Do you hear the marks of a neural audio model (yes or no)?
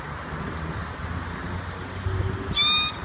no